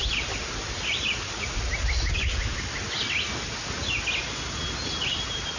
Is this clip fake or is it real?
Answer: real